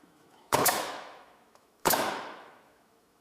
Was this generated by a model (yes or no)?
yes